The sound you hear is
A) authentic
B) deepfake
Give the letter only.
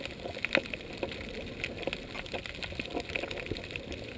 A